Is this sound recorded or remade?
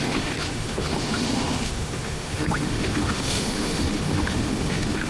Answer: remade